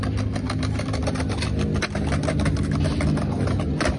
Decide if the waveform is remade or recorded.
recorded